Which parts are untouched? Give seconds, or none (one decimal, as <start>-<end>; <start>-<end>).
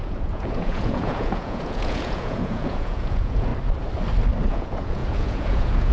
3.5-4.5